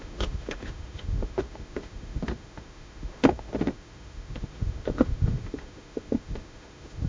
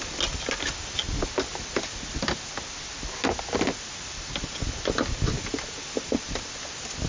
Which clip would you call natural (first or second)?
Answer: second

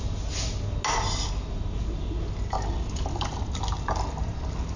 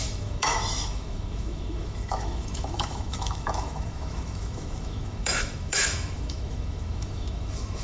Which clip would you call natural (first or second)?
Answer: first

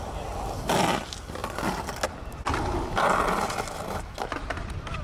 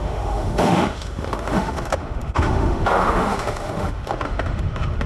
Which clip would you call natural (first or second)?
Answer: first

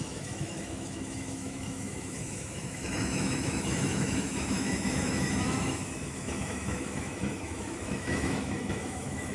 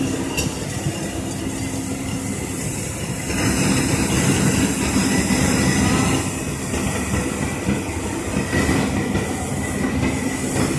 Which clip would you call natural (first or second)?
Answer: second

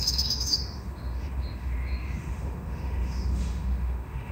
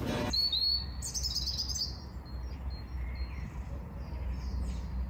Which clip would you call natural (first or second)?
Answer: second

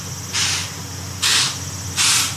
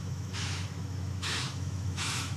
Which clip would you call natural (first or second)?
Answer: first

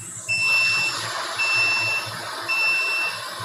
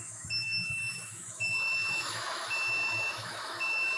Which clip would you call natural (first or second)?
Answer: first